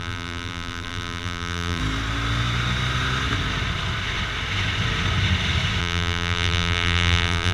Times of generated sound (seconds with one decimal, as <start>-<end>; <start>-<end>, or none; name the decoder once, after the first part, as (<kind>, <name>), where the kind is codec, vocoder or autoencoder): 0.0-1.8 (vocoder, BigVGAN v2); 5.8-7.5